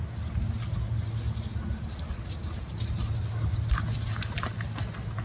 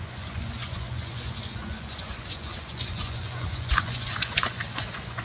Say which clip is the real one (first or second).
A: first